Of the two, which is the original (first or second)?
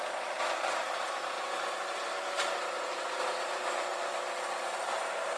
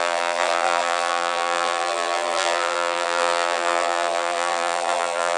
first